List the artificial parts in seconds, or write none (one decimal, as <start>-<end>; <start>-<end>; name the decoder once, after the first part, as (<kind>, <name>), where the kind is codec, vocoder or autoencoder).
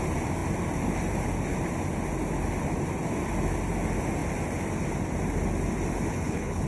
6.1-6.7 (codec, HILCodec)